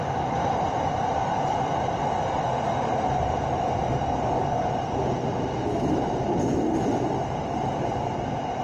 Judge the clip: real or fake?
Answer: real